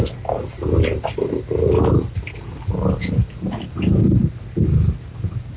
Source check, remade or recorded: recorded